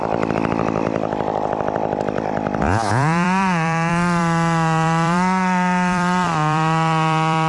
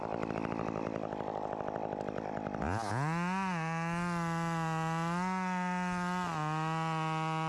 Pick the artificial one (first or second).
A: first